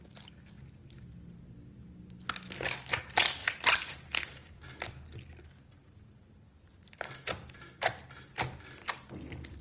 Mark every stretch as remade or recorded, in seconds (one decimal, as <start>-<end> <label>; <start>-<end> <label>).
0.0-3.4 recorded; 3.4-5.3 remade; 5.3-5.8 recorded; 5.8-8.0 remade; 8.0-9.6 recorded

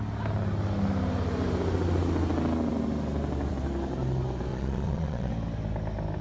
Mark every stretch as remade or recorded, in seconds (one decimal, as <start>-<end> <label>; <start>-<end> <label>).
0.0-4.5 recorded; 4.5-5.3 remade; 5.3-6.2 recorded

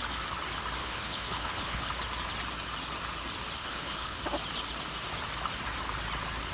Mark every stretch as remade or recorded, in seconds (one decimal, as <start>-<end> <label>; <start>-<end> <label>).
0.0-0.8 recorded; 0.8-1.9 remade; 1.9-3.6 recorded; 3.6-4.2 remade; 4.2-6.5 recorded

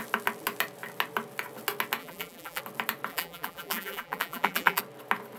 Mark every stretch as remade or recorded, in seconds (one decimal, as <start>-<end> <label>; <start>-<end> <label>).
0.0-2.0 recorded; 2.0-2.6 remade; 2.6-3.1 recorded; 3.1-4.8 remade; 4.8-5.4 recorded

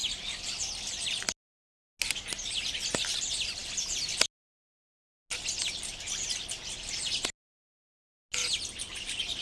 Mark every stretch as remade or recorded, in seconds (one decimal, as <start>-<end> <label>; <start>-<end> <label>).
0.0-9.4 recorded